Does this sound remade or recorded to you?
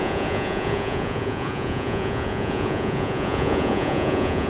remade